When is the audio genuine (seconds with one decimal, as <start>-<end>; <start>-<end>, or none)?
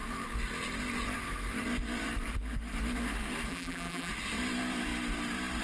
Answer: 0.0-3.5; 4.1-5.6